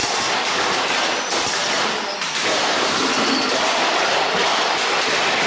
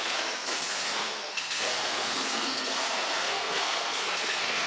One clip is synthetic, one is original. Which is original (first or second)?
first